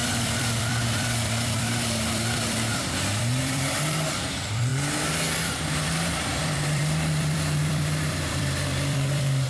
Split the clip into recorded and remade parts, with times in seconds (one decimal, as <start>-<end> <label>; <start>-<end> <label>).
0.0-4.7 remade; 4.7-5.5 recorded; 5.5-9.5 remade